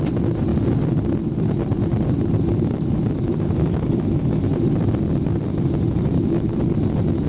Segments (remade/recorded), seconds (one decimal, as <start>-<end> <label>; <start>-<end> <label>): 0.0-0.5 recorded; 0.5-1.1 remade; 1.1-1.9 recorded; 1.9-6.3 remade; 6.3-7.3 recorded